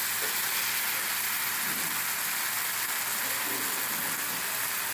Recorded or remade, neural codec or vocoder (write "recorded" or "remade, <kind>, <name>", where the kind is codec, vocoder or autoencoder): recorded